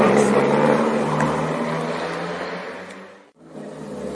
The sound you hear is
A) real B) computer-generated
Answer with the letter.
A